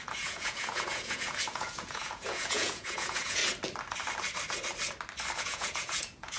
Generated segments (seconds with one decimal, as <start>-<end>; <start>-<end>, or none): 0.0-3.4; 5.4-6.4